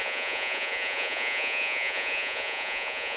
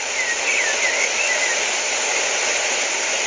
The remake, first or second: first